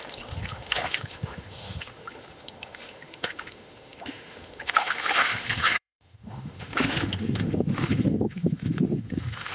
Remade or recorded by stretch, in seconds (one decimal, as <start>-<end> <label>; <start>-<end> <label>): 0.0-9.5 remade